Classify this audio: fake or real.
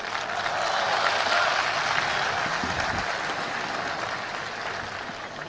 real